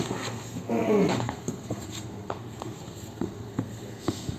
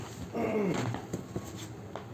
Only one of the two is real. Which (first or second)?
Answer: second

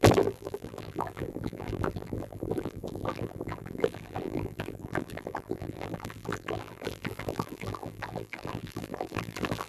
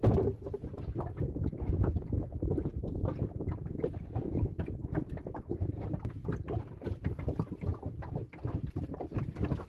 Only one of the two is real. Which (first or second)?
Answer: second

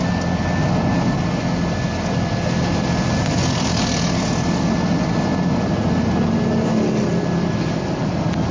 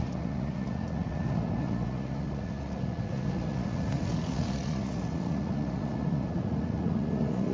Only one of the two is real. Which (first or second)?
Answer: first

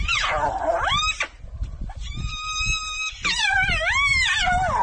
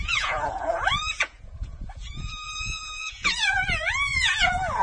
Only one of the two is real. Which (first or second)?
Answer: first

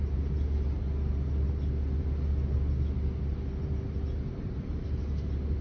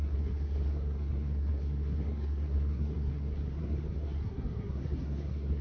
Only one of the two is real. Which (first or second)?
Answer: first